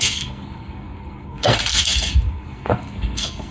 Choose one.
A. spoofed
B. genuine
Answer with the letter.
A